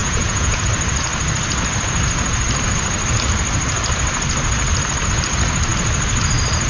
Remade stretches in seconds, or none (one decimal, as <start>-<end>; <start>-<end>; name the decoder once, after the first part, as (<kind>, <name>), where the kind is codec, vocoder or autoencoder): 0.0-0.6 (vocoder, Vocos)